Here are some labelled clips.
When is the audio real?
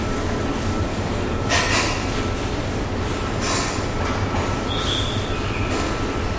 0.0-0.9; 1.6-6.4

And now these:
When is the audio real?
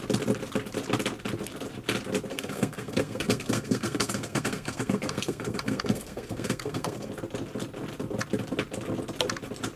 0.0-2.3; 7.1-9.8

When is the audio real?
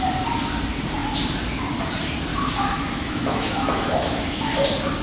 0.0-2.3; 4.5-5.0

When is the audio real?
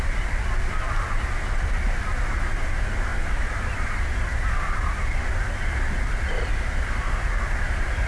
0.0-8.1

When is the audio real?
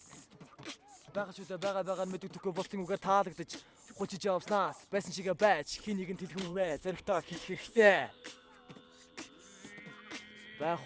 0.0-6.4; 8.5-10.9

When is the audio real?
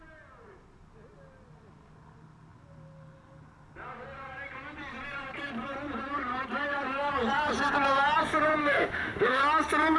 0.0-8.6; 9.4-10.0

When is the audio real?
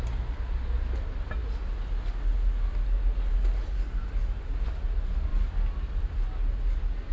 0.0-7.1